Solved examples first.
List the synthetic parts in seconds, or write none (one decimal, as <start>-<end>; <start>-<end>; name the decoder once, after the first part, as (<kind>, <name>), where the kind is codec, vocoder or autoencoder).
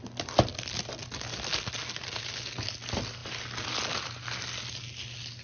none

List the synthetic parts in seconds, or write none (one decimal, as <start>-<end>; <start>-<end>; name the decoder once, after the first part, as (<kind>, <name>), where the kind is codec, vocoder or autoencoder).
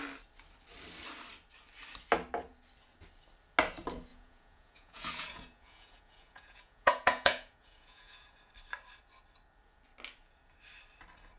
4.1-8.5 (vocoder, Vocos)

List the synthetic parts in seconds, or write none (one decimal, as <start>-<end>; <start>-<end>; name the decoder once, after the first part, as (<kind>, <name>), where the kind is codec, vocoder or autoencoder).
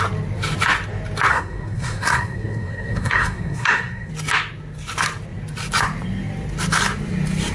1.3-4.1 (codec, SNAC)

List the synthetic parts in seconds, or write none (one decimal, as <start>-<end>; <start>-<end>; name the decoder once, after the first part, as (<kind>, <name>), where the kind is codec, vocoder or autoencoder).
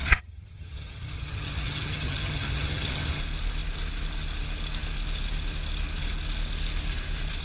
0.0-3.2 (vocoder, HiFi-GAN)